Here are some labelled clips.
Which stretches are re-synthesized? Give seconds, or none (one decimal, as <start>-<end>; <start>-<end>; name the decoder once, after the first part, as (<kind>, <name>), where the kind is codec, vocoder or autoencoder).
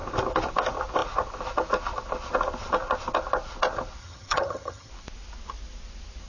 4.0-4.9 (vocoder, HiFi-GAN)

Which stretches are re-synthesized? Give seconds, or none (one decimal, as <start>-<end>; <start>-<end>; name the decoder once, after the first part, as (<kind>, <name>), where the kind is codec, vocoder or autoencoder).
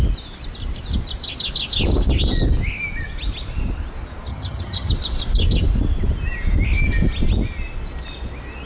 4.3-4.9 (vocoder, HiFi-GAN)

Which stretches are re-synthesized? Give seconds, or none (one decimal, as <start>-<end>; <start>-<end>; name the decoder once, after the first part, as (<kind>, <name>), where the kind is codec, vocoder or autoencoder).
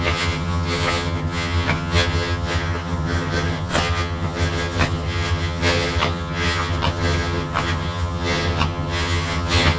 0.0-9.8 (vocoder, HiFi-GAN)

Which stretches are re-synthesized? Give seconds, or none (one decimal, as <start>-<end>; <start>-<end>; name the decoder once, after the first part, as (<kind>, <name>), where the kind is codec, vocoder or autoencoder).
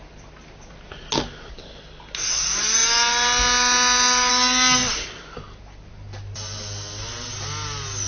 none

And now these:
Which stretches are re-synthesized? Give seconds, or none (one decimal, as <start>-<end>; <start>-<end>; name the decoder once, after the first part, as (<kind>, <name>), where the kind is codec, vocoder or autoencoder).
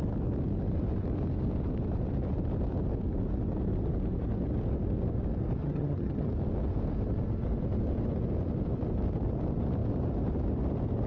5.6-6.3 (vocoder, HiFi-GAN)